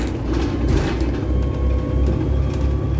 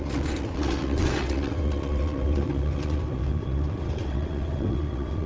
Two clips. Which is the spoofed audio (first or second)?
second